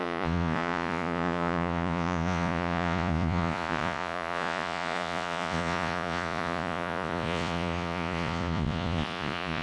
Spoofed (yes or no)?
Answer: yes